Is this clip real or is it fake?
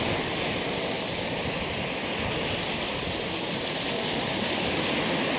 real